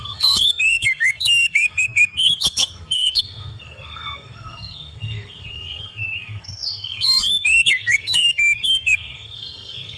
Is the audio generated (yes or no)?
yes